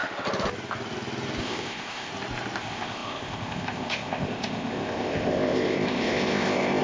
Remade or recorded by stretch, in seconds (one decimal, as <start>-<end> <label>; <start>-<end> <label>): 0.0-1.4 recorded; 1.4-2.1 remade; 2.1-2.6 recorded; 2.6-6.8 remade